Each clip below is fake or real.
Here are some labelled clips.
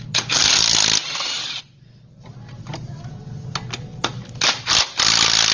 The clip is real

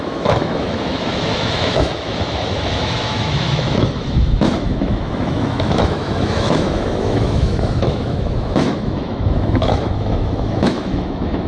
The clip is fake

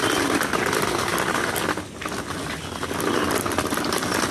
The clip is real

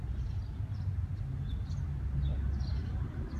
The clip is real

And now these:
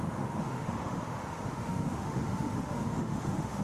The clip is fake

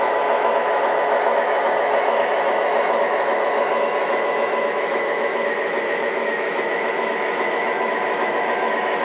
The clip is fake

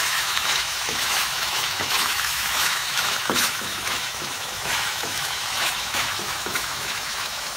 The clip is fake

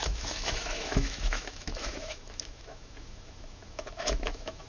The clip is fake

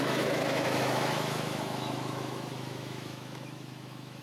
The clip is fake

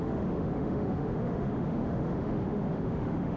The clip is fake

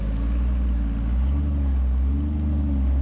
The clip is real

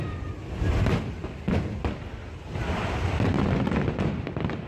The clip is real